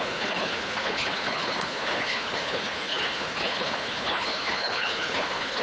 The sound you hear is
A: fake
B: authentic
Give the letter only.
A